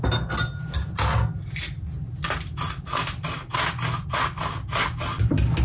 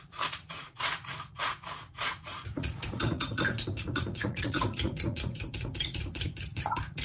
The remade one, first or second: second